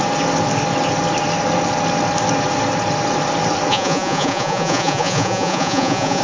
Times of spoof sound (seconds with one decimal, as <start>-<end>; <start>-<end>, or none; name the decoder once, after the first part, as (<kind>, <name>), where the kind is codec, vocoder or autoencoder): 3.7-6.2 (vocoder, Vocos)